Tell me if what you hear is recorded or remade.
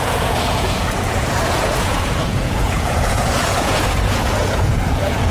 remade